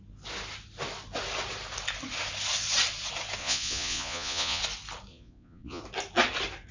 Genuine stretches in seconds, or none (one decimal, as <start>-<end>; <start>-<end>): 0.0-3.4; 4.6-5.1; 5.8-6.7